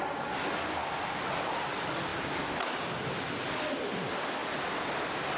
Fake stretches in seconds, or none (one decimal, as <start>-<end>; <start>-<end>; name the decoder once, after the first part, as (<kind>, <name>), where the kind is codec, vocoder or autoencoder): none